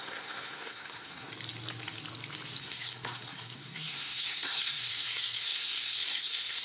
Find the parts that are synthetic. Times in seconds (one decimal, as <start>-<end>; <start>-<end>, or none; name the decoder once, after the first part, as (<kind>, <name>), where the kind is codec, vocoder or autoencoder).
0.0-1.3 (codec, SNAC); 2.6-6.6